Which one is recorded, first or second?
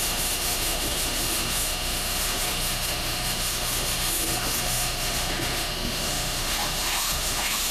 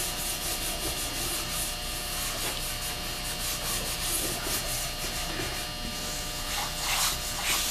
second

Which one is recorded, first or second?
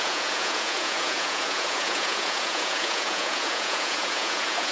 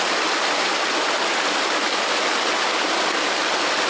second